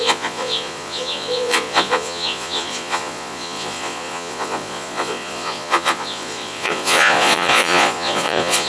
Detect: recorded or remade remade